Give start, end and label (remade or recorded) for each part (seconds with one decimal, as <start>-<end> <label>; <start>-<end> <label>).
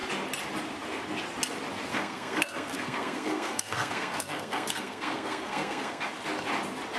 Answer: 0.0-1.9 recorded; 1.9-6.1 remade; 6.1-7.0 recorded